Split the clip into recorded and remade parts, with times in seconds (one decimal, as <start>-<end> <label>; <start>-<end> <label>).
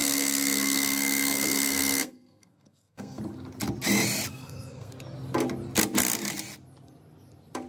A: 0.0-3.2 remade; 3.2-4.3 recorded; 4.3-4.9 remade; 4.9-7.7 recorded